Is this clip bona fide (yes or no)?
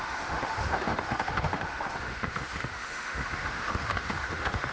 no